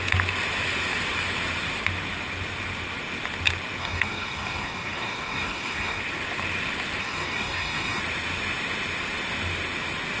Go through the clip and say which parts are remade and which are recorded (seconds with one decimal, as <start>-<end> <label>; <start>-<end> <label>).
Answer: 0.0-3.8 recorded; 3.8-6.0 remade; 6.0-7.0 recorded; 7.0-8.0 remade; 8.0-10.2 recorded